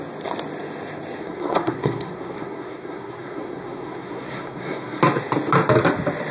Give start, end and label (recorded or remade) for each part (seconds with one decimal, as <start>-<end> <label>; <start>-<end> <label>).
0.0-1.2 recorded; 1.2-5.0 remade; 5.0-6.3 recorded